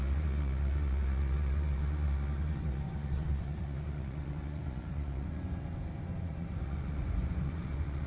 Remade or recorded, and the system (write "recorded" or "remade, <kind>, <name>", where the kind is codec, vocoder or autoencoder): remade, vocoder, Vocos